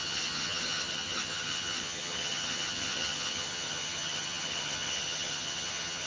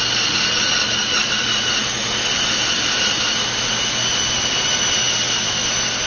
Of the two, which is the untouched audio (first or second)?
second